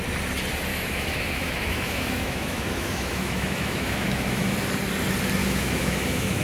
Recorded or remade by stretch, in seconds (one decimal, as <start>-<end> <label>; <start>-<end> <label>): 0.0-0.7 recorded; 0.7-4.5 remade; 4.5-5.4 recorded; 5.4-6.4 remade

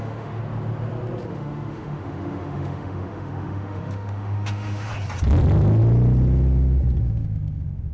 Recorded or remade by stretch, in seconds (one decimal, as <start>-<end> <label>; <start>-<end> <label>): 0.0-0.4 remade; 0.4-1.3 recorded; 1.3-4.9 remade; 4.9-7.0 recorded; 7.0-7.9 remade

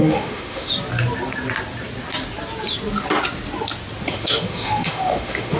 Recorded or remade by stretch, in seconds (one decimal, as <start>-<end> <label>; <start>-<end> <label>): 0.0-0.7 remade; 0.7-4.1 recorded; 4.1-5.6 remade

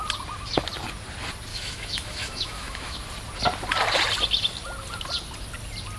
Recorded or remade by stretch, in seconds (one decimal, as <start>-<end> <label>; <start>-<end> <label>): 0.0-1.5 recorded; 1.5-3.0 remade; 3.0-6.0 recorded

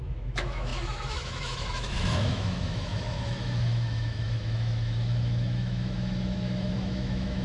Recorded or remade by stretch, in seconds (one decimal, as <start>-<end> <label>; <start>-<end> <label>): 0.0-7.4 remade

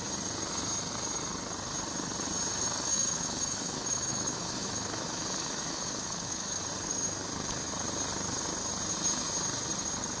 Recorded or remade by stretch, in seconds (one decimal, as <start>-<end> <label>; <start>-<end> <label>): 0.0-2.9 recorded; 2.9-6.6 remade; 6.6-10.2 recorded

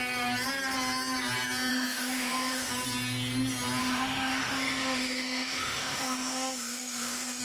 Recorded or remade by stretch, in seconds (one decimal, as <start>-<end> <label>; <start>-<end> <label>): 0.0-1.7 recorded; 1.7-2.7 remade; 2.7-3.8 recorded; 3.8-7.4 remade

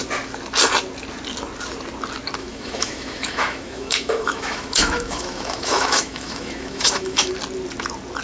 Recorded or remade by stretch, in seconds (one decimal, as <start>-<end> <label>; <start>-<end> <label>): 0.0-2.4 recorded; 2.4-7.3 remade; 7.3-8.2 recorded